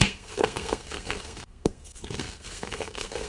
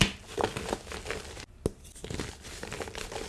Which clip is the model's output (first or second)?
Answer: first